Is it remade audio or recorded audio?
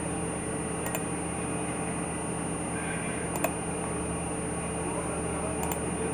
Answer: recorded